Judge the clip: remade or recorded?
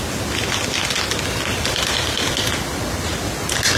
recorded